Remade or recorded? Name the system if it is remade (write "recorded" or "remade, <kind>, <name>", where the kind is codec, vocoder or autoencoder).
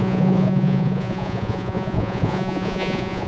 remade, vocoder, Vocos